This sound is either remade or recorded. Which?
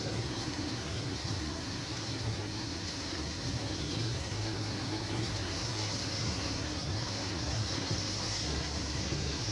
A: remade